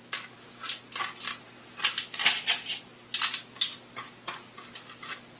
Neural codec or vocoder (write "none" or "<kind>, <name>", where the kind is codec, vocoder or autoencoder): none